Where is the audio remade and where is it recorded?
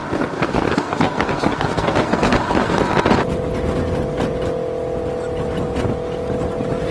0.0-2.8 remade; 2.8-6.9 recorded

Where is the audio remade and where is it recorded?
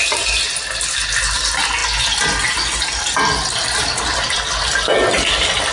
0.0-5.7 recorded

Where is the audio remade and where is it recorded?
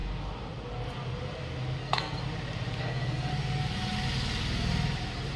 0.0-1.8 recorded; 1.8-2.2 remade; 2.2-2.8 recorded; 2.8-3.3 remade; 3.3-5.4 recorded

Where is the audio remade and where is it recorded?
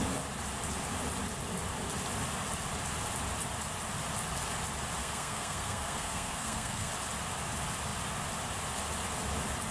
0.0-5.0 recorded; 5.0-6.9 remade; 6.9-9.7 recorded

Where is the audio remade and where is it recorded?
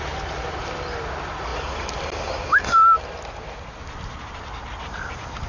0.0-5.5 recorded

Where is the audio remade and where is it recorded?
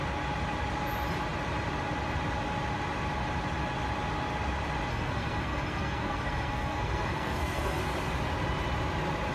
0.0-4.9 recorded; 4.9-7.8 remade; 7.8-9.3 recorded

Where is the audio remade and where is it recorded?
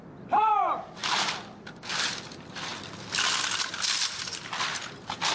0.0-5.3 recorded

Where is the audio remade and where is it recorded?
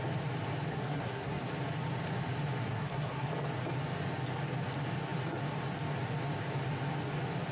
0.0-0.7 recorded; 0.7-1.4 remade; 1.4-2.6 recorded; 2.6-3.3 remade; 3.3-7.5 recorded